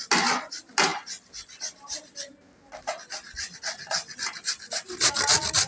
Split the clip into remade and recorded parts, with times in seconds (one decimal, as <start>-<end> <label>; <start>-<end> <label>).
0.0-5.7 recorded